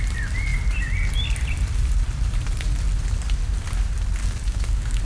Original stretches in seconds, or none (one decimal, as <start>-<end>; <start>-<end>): 0.0-4.2